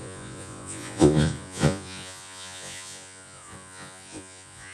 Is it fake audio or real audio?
fake